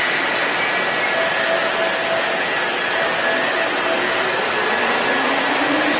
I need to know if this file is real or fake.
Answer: real